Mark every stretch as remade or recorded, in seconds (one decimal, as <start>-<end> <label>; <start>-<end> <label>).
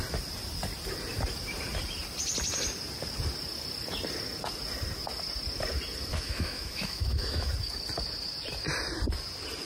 0.0-6.1 recorded; 6.1-7.5 remade; 7.5-9.7 recorded